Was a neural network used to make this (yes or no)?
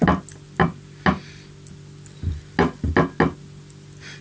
no